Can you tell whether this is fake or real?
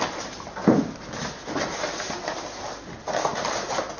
fake